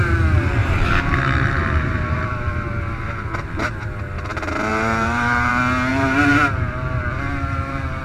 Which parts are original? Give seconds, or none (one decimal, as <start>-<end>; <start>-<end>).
0.0-0.6; 2.5-4.7; 5.5-5.9